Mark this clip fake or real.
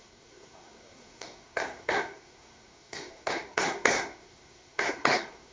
fake